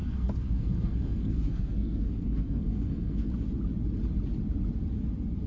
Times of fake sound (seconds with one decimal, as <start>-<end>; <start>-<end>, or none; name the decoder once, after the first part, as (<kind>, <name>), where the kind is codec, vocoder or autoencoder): 0.0-3.3 (codec, SNAC)